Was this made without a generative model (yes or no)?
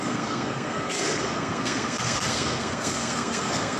no